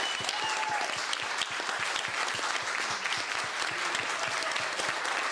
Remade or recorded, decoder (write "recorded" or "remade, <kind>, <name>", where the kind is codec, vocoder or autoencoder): recorded